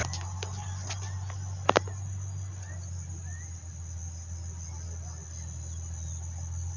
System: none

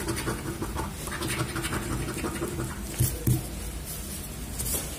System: none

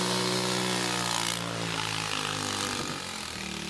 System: none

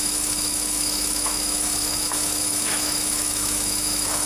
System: autoencoder, DAC-VAE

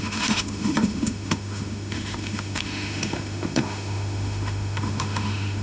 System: autoencoder, DAC-VAE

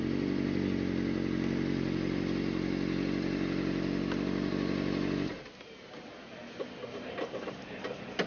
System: none